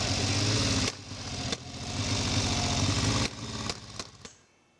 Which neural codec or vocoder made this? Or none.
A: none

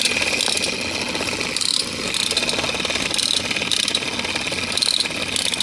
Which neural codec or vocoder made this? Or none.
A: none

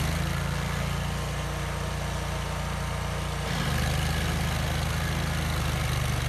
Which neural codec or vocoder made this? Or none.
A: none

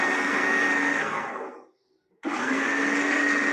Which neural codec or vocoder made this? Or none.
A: codec, SNAC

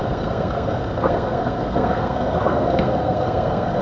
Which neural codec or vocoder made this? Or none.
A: codec, SNAC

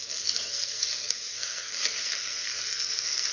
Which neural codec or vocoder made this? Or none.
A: codec, SNAC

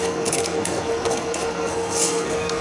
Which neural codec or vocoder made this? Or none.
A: codec, SNAC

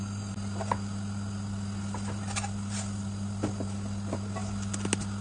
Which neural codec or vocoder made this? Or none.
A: none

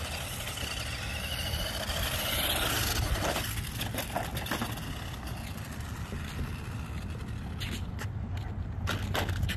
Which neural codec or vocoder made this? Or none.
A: none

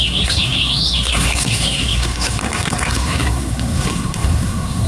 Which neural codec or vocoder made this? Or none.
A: codec, SNAC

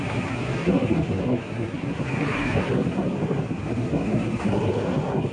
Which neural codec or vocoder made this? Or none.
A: codec, SNAC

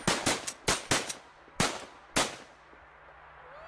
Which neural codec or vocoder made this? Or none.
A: none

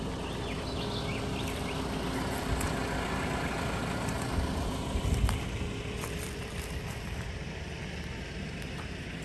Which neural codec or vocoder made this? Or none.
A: none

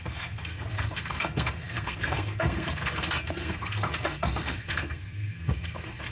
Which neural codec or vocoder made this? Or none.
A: codec, SNAC